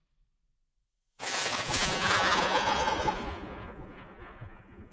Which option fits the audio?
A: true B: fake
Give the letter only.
B